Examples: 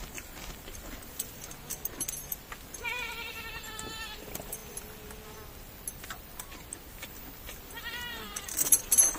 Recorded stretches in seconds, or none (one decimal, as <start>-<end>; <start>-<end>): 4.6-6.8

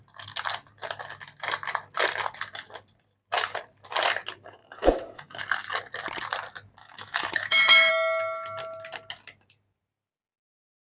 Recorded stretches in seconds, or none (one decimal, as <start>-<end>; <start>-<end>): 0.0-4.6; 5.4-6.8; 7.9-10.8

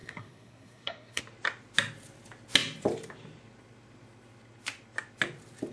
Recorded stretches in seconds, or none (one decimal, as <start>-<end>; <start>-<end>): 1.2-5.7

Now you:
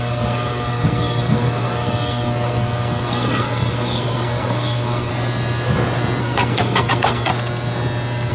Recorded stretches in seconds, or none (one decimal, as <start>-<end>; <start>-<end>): 5.1-6.2; 7.3-8.3

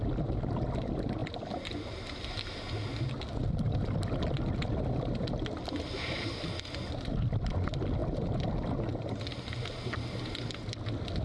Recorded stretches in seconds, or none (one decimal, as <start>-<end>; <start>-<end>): 0.0-11.2

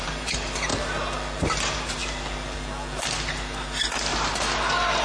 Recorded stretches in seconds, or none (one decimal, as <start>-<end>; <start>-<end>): 0.7-1.4; 2.0-5.0